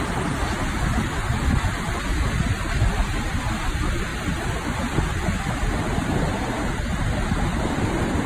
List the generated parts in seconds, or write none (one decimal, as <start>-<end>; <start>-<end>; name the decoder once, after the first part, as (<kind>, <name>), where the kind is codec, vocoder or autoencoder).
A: none

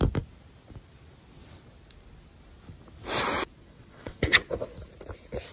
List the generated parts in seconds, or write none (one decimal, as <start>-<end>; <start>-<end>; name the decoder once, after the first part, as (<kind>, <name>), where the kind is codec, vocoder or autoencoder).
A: 3.6-4.4 (vocoder, WaveNeXt)

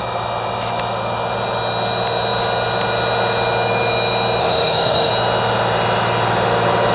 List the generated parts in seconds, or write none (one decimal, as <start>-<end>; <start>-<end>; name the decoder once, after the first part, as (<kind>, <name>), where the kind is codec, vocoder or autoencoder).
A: 4.4-5.1 (autoencoder, DAC-VAE)

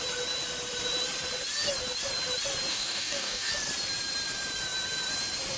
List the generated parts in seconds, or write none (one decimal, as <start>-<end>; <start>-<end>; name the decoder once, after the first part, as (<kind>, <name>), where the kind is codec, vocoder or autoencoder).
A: 2.7-3.5 (codec, DAC)

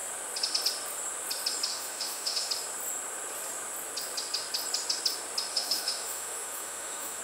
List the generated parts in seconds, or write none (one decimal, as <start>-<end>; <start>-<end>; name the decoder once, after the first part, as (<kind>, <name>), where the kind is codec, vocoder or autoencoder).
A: 1.7-2.5 (autoencoder, DAC-VAE); 5.5-7.2

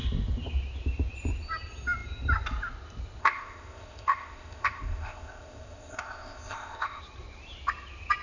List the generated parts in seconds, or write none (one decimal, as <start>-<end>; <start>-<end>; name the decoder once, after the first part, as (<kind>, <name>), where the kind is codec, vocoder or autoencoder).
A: 3.2-7.0 (codec, ZipCodec)